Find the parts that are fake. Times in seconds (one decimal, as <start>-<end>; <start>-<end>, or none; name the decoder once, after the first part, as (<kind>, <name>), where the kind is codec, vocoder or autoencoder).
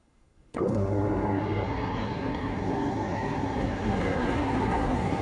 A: 0.0-5.2 (codec, SNAC)